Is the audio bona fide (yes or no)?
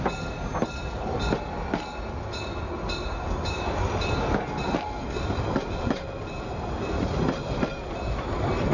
yes